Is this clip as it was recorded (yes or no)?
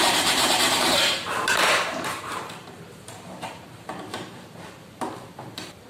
no